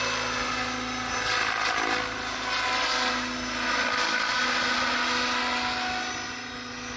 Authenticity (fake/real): real